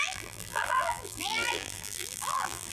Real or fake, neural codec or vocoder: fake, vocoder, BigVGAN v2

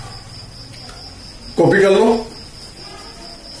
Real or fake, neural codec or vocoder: real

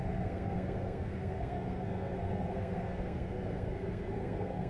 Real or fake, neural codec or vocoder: fake, codec, SNAC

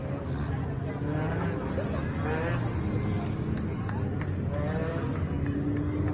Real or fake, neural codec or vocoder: real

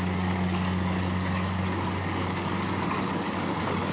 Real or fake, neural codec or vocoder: fake, codec, DAC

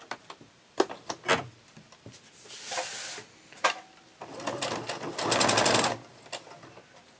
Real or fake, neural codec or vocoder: real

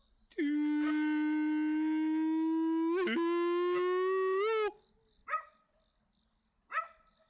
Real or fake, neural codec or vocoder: real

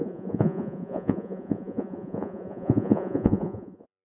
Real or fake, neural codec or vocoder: fake, vocoder, Vocos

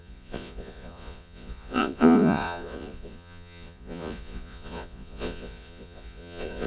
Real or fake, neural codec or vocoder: fake, vocoder, Vocos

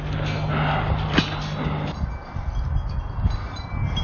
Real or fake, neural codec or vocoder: real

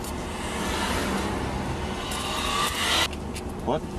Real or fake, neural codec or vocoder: real